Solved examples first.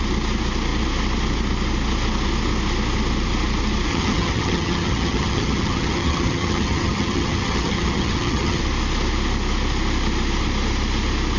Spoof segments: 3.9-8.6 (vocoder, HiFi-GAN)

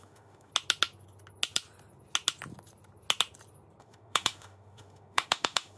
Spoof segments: 0.0-0.5 (autoencoder, DAC-VAE); 3.8-5.8

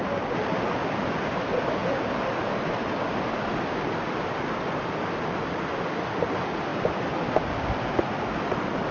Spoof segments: 1.8-4.7 (vocoder, BigVGAN v2)

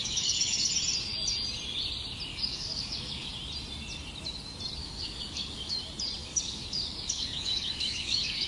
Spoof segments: 0.0-0.7 (codec, DAC); 2.3-3.3; 4.8-5.8; 6.2-8.5

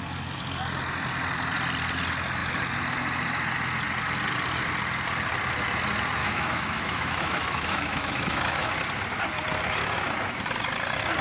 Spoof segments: 6.2-8.7 (autoencoder, DAC-VAE)

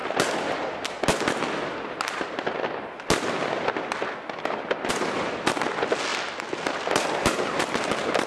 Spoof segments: none